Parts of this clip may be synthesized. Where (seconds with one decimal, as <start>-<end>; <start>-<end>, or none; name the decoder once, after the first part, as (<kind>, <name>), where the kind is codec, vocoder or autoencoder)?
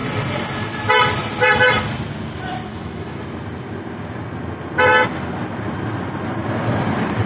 2.7-3.2 (autoencoder, DAC-VAE)